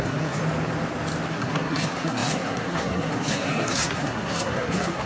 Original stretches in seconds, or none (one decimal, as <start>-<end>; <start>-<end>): 0.4-1.3